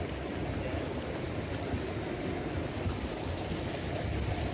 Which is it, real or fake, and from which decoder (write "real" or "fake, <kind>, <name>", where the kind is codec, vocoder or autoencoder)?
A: real